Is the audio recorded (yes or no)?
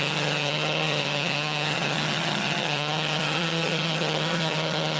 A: no